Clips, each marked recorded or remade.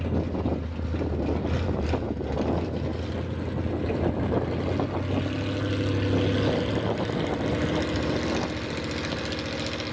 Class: recorded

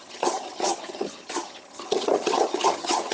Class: remade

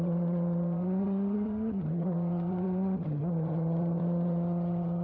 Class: remade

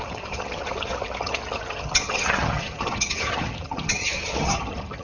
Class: remade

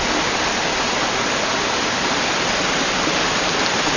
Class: recorded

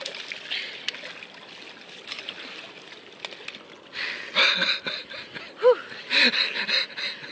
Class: recorded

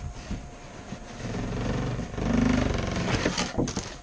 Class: recorded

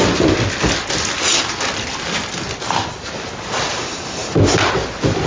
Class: recorded